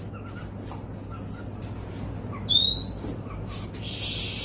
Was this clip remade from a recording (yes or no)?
no